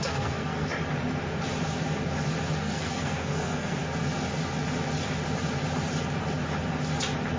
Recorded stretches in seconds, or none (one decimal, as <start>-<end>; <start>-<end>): 0.7-2.6; 3.8-7.4